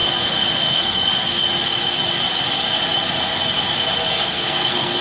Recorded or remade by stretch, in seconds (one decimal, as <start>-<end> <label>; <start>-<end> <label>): 0.0-0.6 recorded; 0.6-1.1 remade; 1.1-4.1 recorded; 4.1-5.0 remade